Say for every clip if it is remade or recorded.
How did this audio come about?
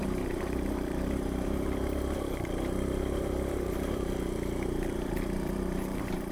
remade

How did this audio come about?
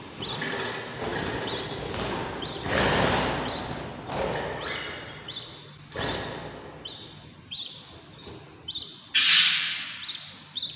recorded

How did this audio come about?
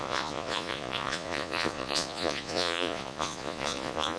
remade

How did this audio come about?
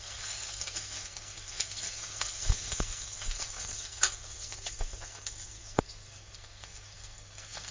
remade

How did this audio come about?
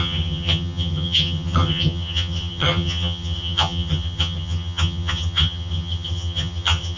remade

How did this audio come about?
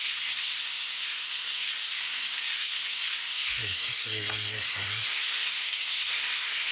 remade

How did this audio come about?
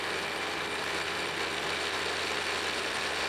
recorded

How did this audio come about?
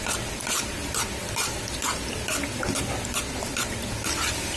remade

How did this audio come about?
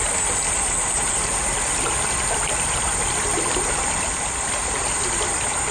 recorded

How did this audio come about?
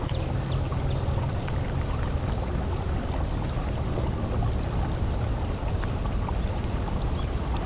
recorded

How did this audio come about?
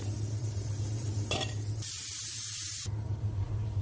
remade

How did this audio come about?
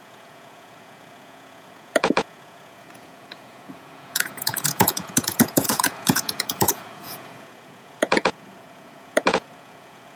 remade